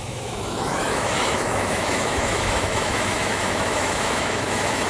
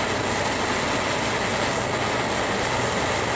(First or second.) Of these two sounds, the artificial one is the first